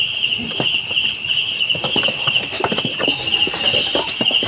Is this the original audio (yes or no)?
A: yes